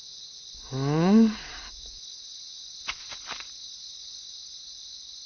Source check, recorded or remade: recorded